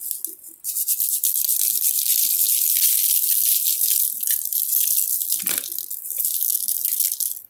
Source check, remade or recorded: recorded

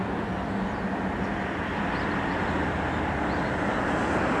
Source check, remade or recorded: recorded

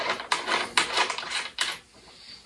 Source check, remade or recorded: recorded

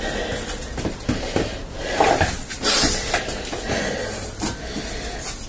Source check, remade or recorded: recorded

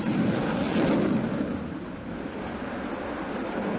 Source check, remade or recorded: recorded